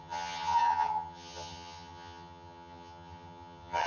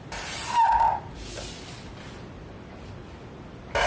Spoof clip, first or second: first